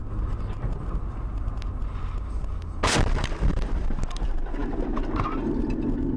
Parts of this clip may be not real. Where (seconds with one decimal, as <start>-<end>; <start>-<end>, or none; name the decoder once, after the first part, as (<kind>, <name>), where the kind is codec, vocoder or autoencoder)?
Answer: none

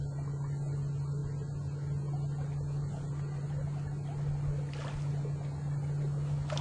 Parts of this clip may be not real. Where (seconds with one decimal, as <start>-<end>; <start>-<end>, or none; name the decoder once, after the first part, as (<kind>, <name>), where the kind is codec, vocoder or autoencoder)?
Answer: none

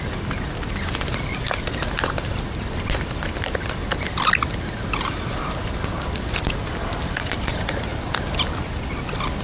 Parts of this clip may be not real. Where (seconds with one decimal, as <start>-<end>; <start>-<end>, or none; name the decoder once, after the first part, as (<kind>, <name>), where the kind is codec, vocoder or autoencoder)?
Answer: none

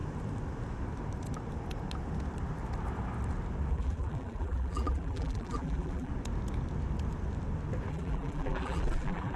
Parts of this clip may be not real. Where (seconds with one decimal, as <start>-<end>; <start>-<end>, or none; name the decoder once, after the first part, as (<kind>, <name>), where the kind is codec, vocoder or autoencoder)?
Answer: 3.7-6.1 (vocoder, BigVGAN v2); 7.9-9.4

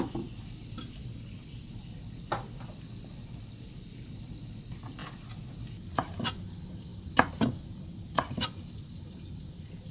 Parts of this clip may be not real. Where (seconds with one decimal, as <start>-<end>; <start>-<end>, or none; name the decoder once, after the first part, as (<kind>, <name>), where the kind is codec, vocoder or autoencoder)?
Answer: none